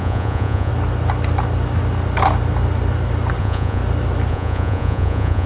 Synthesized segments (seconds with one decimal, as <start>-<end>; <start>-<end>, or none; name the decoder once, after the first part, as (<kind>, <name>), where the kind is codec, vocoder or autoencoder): 0.0-0.7 (vocoder, Vocos); 3.4-3.8; 4.3-5.5

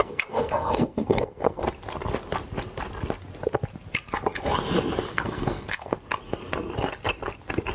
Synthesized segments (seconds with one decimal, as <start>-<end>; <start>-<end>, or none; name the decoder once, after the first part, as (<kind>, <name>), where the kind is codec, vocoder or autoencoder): 0.0-1.6 (codec, SNAC); 5.1-6.0

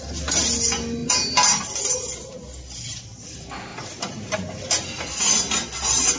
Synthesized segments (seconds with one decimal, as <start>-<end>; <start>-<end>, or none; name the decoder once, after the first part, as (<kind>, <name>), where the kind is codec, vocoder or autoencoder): none

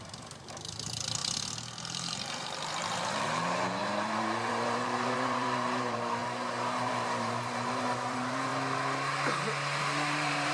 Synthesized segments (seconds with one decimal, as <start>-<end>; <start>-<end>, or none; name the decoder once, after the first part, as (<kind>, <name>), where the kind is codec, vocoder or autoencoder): 0.0-1.2 (vocoder, BigVGAN v2); 1.8-8.5; 9.8-10.5

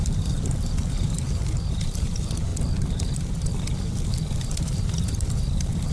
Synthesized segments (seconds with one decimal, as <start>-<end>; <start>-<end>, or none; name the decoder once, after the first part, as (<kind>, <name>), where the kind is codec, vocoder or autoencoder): 0.0-2.5 (vocoder, BigVGAN v2); 4.4-5.9

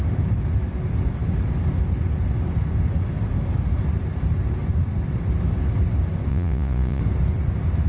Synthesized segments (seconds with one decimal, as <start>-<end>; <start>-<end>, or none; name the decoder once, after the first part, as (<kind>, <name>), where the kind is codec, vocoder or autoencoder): 6.3-7.0 (vocoder, Vocos)

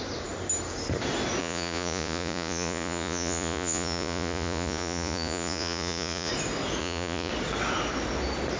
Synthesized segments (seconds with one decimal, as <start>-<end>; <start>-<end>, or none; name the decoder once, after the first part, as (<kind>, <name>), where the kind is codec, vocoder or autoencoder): 1.4-6.3 (vocoder, Vocos); 6.8-7.3

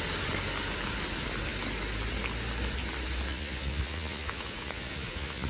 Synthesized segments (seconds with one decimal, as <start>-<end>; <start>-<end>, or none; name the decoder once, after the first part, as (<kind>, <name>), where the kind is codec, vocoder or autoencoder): 3.3-5.5 (vocoder, Vocos)